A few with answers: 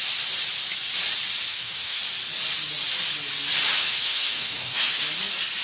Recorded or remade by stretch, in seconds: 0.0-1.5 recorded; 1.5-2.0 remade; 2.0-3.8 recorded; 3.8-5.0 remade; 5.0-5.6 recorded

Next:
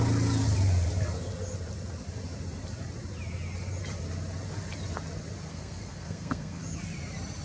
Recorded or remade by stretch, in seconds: 0.0-5.5 recorded; 5.5-6.6 remade; 6.6-7.4 recorded

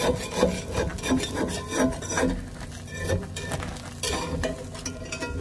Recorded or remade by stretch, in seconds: 0.0-5.4 recorded